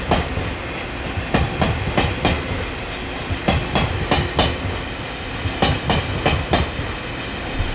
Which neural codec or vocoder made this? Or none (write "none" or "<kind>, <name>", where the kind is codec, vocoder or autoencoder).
none